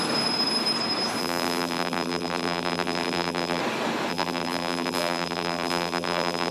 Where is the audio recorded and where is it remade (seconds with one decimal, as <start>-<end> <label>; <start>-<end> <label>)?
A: 0.0-1.2 recorded; 1.2-3.6 remade; 3.6-4.1 recorded; 4.1-6.5 remade